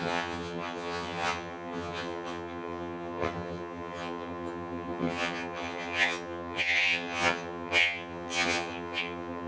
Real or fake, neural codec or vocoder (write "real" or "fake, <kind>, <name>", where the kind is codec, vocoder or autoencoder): fake, vocoder, HiFi-GAN